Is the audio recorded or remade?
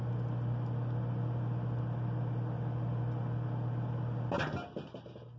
recorded